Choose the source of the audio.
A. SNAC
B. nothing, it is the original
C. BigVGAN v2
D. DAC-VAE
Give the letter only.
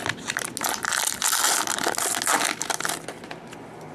B